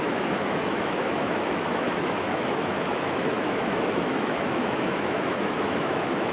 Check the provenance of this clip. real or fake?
fake